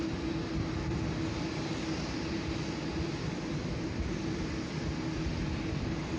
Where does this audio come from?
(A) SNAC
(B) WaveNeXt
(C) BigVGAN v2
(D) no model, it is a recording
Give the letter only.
D